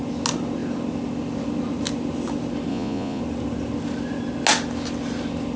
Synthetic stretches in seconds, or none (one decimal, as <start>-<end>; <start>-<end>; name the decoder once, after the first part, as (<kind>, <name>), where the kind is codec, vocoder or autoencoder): 2.7-3.2 (vocoder, Vocos)